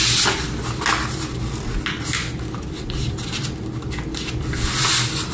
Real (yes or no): yes